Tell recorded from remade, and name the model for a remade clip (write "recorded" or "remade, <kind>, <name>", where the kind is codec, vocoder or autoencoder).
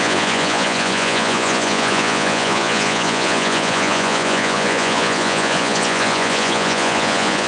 remade, vocoder, Vocos